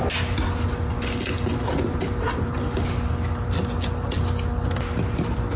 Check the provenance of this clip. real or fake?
real